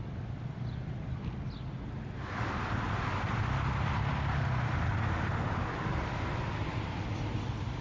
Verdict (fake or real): real